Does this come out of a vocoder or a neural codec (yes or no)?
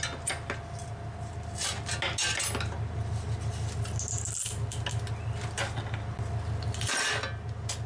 no